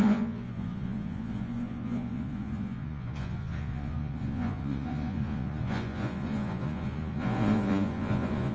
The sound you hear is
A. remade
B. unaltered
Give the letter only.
A